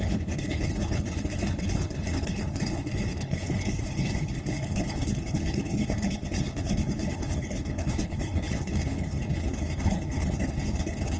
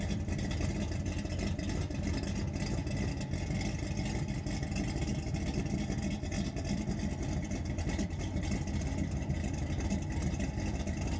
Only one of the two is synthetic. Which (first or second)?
first